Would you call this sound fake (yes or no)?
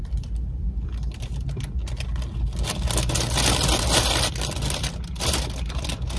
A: no